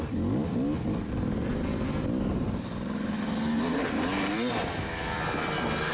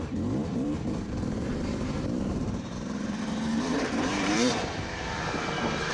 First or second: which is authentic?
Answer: first